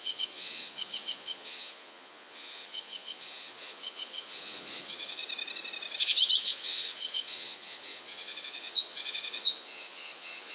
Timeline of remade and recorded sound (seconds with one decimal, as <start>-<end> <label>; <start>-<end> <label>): 0.0-5.2 remade; 5.2-6.0 recorded; 6.0-10.5 remade

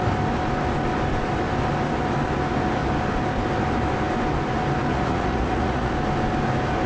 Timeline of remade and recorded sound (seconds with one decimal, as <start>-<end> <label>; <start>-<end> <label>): 0.0-4.9 recorded; 4.9-5.9 remade; 5.9-6.9 recorded

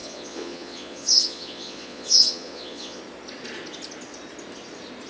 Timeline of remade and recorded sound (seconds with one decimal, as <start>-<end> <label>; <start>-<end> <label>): 0.0-3.0 remade; 3.0-5.1 recorded

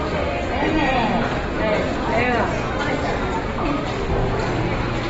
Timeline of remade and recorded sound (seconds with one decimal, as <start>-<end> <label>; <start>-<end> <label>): 0.0-0.6 recorded; 0.6-3.7 remade; 3.7-5.1 recorded

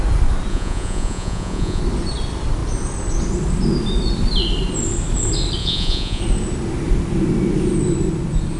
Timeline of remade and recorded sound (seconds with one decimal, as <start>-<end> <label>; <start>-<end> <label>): 0.0-0.5 recorded; 0.5-1.8 remade; 1.8-5.6 recorded; 5.6-6.2 remade; 6.2-8.6 recorded

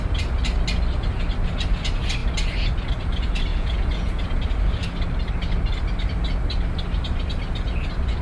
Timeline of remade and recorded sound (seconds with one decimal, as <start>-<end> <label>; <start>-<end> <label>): 0.0-3.5 recorded; 3.5-4.4 remade; 4.4-8.2 recorded